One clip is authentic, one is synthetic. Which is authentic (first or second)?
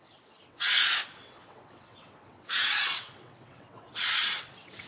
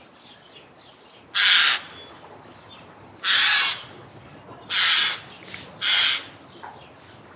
second